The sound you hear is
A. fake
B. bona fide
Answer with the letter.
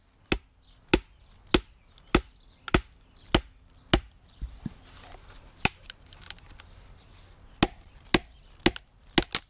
B